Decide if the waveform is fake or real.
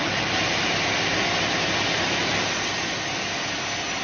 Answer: real